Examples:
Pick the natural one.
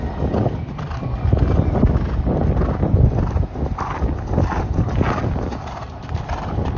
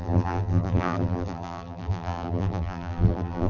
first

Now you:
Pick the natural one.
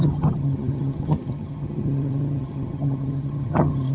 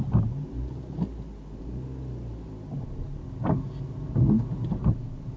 second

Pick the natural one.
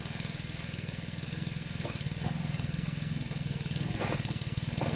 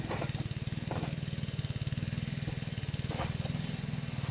second